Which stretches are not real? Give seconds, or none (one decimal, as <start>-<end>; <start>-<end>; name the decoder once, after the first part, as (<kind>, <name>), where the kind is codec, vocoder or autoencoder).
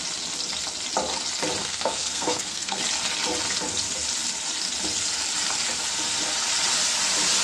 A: 1.6-2.8 (codec, SNAC)